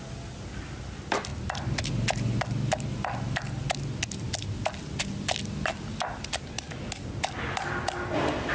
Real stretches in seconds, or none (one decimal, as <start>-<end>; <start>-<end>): 0.0-8.5